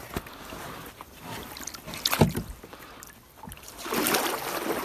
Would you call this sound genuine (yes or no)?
yes